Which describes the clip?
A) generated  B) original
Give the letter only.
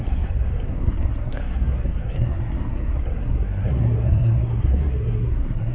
A